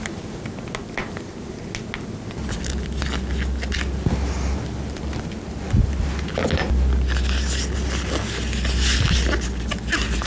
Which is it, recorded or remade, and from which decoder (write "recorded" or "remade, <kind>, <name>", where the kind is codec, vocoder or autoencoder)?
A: recorded